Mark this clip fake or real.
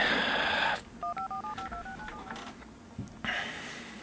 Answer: real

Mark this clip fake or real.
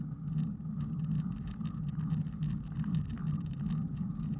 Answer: real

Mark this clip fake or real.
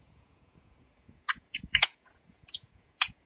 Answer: fake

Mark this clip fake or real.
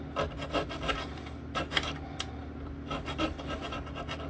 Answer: real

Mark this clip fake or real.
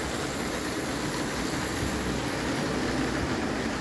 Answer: real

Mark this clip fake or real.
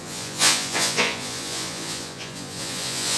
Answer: fake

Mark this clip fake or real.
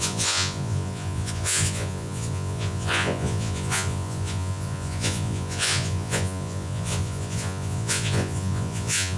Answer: fake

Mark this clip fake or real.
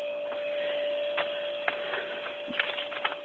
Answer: real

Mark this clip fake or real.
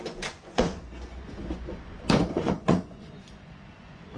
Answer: fake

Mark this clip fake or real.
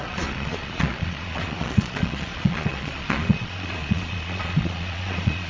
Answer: fake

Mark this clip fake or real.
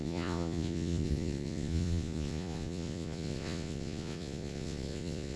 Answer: fake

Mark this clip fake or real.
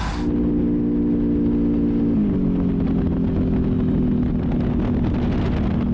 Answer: real